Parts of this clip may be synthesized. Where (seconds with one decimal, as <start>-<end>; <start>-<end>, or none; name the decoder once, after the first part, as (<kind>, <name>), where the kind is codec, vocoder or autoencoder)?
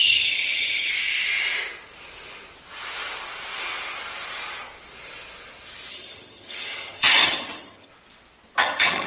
0.0-0.9 (vocoder, HiFi-GAN); 5.9-7.9; 8.6-9.1